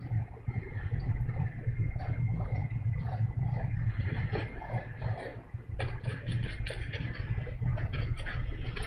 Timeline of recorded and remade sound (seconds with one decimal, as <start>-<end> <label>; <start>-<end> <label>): 0.0-5.3 recorded; 5.3-5.9 remade; 5.9-7.7 recorded; 7.7-8.9 remade